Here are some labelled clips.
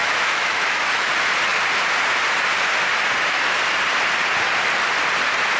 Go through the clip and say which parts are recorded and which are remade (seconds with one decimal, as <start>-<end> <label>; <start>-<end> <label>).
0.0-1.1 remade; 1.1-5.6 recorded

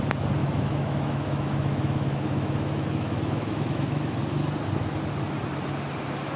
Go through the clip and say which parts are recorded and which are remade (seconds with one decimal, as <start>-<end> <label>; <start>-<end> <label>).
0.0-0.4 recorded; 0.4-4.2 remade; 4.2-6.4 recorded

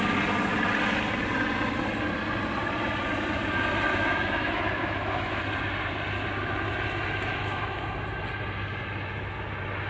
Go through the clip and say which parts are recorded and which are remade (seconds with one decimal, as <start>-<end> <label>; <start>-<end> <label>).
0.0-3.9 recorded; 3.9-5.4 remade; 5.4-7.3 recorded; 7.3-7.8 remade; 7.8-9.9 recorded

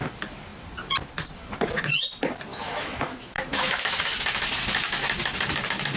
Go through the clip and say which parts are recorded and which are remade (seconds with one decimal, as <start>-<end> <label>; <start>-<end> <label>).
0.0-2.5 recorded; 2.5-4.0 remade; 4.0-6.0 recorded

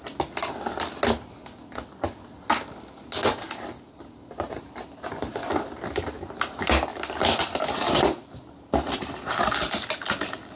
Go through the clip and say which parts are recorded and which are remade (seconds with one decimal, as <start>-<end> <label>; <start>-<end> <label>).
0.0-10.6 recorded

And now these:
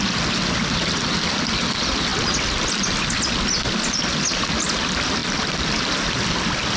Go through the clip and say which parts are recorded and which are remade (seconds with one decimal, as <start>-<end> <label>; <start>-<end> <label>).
0.0-6.8 recorded

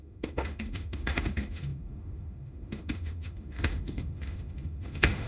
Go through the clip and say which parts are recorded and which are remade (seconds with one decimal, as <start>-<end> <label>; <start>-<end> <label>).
0.0-5.3 remade

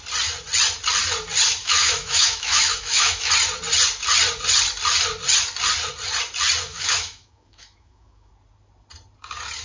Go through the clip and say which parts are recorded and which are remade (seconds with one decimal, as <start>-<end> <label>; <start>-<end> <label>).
0.0-1.6 recorded; 1.6-3.3 remade; 3.3-6.7 recorded; 6.7-8.3 remade; 8.3-9.6 recorded